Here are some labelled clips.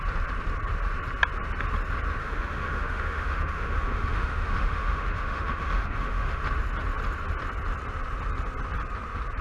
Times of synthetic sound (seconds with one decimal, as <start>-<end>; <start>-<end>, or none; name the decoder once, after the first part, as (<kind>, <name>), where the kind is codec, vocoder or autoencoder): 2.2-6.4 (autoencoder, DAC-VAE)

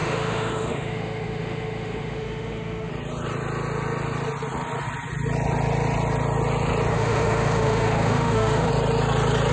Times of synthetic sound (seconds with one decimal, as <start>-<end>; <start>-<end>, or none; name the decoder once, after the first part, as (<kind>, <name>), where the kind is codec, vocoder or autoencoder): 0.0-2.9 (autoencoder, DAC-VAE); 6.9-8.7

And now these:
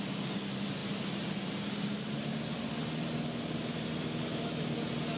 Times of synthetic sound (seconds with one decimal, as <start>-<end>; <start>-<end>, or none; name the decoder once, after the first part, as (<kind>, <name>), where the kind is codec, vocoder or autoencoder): none

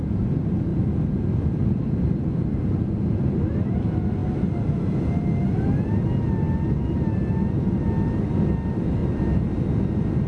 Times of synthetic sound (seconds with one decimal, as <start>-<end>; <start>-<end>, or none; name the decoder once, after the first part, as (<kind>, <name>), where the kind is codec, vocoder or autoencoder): 0.7-3.7 (vocoder, BigVGAN v2); 9.0-9.6